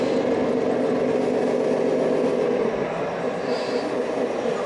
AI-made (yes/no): no